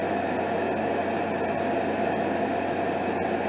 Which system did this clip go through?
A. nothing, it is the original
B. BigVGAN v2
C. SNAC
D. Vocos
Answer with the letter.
A